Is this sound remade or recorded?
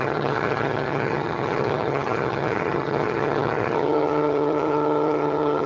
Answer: remade